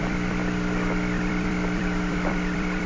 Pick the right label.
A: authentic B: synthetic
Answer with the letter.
B